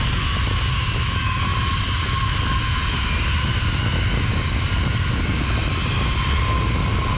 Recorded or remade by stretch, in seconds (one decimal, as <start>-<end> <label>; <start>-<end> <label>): 0.0-7.2 recorded